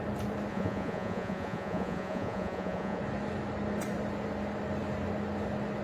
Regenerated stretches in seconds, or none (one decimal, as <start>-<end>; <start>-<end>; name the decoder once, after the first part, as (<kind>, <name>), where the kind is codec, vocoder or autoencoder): 0.5-3.0 (vocoder, Vocos)